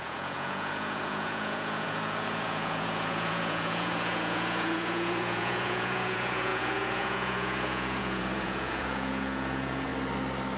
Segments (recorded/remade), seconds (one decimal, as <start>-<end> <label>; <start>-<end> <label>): 0.0-9.9 remade; 9.9-10.6 recorded